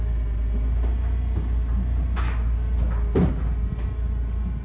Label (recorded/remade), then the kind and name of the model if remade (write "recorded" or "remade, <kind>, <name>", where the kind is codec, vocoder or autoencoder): recorded